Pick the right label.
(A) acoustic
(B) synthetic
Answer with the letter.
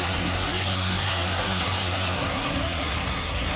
B